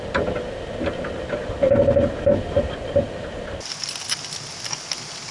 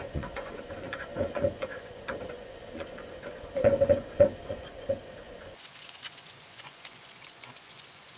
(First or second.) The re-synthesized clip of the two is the second